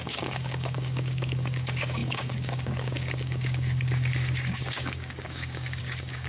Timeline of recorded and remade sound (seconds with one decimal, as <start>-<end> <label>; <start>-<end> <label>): 0.0-6.3 remade